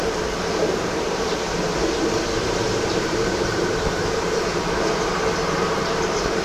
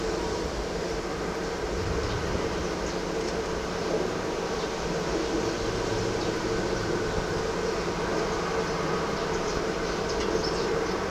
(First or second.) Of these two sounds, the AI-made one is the first